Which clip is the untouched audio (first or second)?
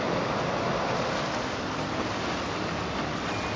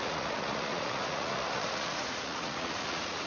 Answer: first